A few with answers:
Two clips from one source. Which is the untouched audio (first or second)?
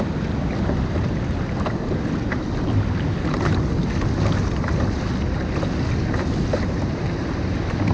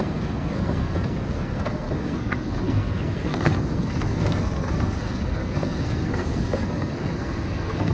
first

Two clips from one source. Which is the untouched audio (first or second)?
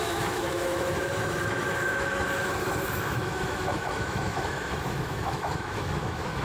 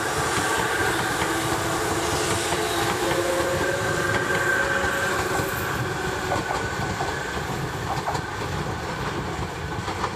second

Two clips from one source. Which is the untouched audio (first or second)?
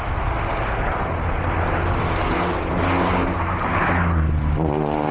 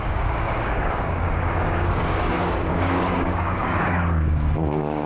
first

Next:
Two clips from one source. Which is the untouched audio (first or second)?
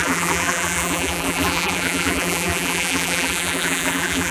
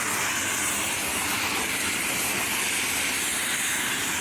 second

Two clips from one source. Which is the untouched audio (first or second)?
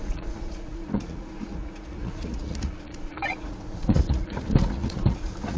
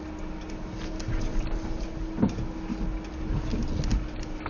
second